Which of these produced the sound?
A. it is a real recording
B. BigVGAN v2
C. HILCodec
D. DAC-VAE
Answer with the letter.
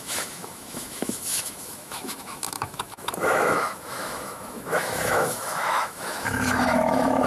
D